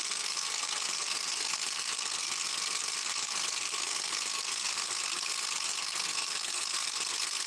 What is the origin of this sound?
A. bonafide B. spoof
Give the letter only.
B